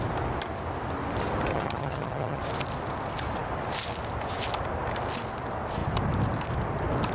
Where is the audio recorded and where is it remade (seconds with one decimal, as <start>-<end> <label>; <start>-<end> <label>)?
0.0-1.5 recorded; 1.5-2.4 remade; 2.4-7.1 recorded